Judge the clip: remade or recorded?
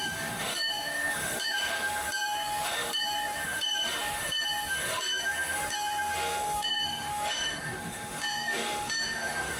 remade